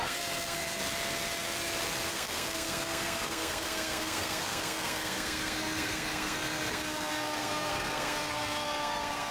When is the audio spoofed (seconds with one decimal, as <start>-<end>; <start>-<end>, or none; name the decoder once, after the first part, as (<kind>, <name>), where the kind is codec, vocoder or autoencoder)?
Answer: 0.0-0.8 (codec, SNAC); 2.1-9.3